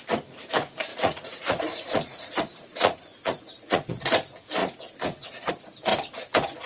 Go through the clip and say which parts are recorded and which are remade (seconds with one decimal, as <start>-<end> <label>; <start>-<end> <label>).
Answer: 0.0-0.9 recorded; 0.9-4.0 remade; 4.0-4.6 recorded; 4.6-5.5 remade; 5.5-6.7 recorded